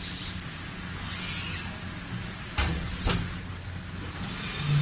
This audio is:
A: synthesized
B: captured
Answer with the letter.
B